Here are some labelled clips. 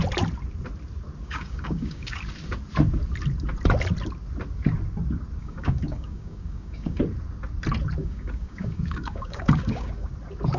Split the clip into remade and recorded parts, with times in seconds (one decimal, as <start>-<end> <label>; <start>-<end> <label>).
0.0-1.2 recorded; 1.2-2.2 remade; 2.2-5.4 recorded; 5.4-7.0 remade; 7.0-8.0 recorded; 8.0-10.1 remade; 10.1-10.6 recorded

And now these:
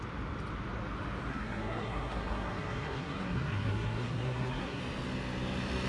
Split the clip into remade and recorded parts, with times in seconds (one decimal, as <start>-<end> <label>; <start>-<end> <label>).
0.0-1.3 recorded; 1.3-4.8 remade; 4.8-5.9 recorded

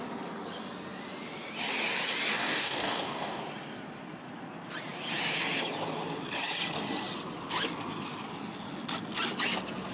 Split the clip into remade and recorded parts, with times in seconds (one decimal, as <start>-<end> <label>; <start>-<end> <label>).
0.0-2.3 recorded; 2.3-3.4 remade; 3.4-9.9 recorded

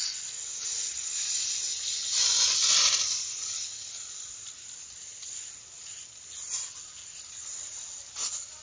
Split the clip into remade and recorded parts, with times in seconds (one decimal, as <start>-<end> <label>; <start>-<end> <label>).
0.0-8.6 recorded